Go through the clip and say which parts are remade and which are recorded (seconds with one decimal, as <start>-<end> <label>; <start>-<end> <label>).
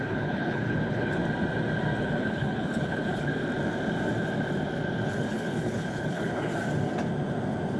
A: 0.0-1.2 remade; 1.2-2.0 recorded; 2.0-3.3 remade; 3.3-5.1 recorded; 5.1-6.5 remade; 6.5-7.8 recorded